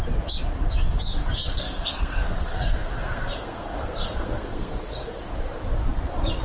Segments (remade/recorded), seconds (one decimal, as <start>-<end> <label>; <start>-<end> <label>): 0.0-1.5 recorded; 1.5-5.2 remade; 5.2-6.4 recorded